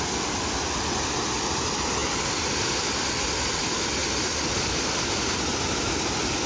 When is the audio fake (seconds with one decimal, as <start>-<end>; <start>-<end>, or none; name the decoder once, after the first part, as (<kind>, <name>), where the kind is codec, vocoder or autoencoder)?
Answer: none